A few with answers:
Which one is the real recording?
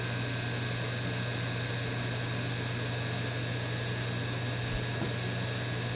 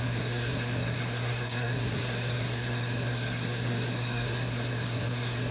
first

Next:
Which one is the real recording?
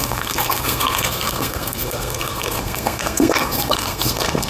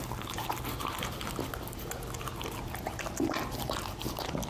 second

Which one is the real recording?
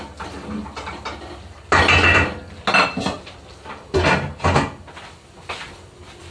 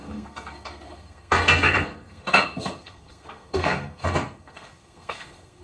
first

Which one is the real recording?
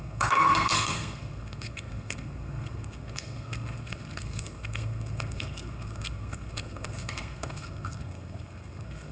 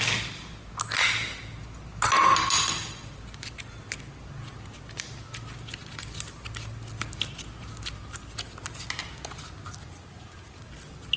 second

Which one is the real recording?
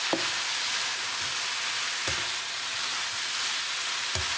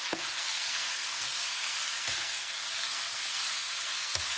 first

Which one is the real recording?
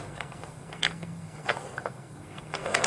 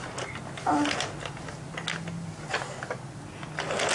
second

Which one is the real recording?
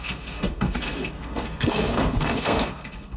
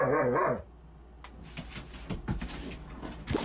second